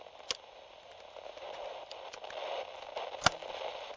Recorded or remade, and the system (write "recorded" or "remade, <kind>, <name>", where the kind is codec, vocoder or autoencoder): recorded